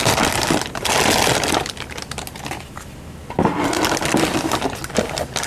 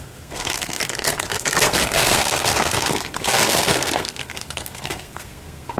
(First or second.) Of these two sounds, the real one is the first